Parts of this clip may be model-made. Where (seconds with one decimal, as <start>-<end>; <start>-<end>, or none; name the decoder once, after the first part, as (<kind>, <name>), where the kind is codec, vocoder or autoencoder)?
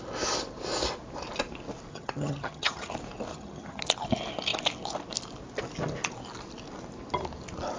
1.9-2.9 (vocoder, HiFi-GAN); 3.3-3.8